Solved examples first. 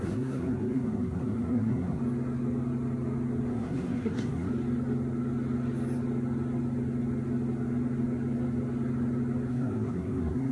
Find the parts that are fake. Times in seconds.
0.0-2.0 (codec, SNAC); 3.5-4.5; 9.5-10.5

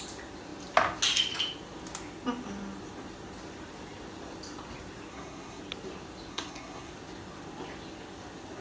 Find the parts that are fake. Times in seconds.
5.1-5.6 (codec, SNAC); 6.3-6.9

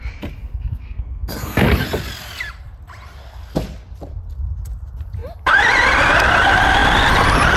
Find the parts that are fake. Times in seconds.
0.4-1.6 (codec, SNAC)